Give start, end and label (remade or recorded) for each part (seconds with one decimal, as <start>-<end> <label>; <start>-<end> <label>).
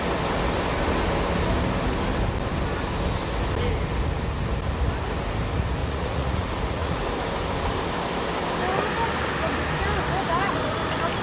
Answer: 0.0-5.8 recorded; 5.8-7.0 remade; 7.0-11.2 recorded